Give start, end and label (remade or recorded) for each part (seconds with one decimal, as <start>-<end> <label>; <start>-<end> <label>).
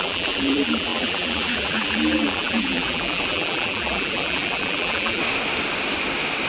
0.0-5.2 remade; 5.2-6.5 recorded